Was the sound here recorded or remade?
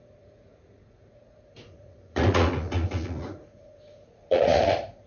remade